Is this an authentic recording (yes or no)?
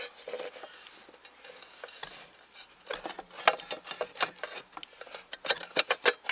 yes